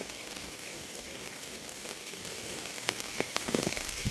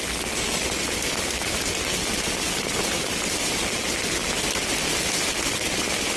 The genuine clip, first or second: second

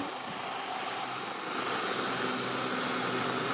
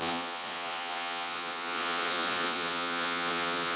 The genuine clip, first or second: first